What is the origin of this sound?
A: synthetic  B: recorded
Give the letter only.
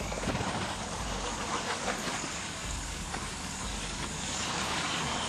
A